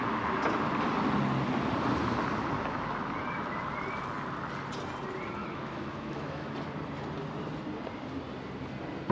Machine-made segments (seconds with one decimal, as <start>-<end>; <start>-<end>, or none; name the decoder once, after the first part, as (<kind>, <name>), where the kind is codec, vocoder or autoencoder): 5.4-6.5 (autoencoder, DAC-VAE)